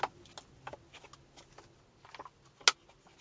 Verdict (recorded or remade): recorded